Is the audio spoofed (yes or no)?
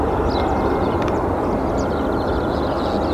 no